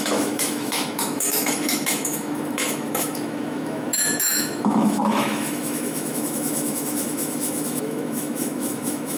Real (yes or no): no